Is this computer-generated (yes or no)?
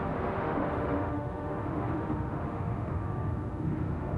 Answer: yes